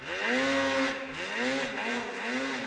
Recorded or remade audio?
recorded